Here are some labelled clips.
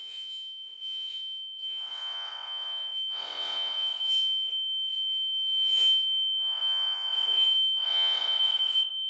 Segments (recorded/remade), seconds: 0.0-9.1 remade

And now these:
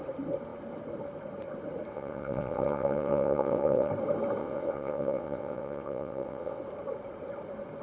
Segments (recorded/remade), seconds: 0.0-1.9 recorded; 1.9-3.9 remade; 3.9-4.4 recorded; 4.4-6.6 remade; 6.6-7.8 recorded

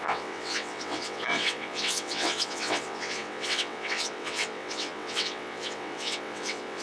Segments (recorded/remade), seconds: 0.0-6.8 remade

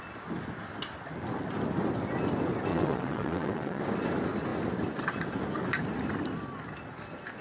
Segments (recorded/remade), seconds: 0.0-2.7 recorded; 2.7-3.8 remade; 3.8-7.4 recorded

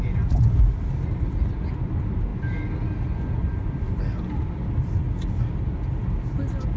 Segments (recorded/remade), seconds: 0.0-6.8 recorded